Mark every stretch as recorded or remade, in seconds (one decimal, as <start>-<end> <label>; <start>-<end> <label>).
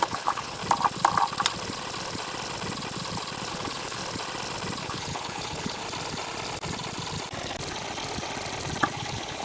0.0-0.6 remade; 0.6-3.5 recorded; 3.5-4.0 remade; 4.0-4.8 recorded; 4.8-5.8 remade; 5.8-8.9 recorded; 8.9-9.4 remade